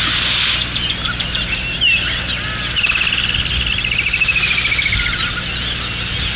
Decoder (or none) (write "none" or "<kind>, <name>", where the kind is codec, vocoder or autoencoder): none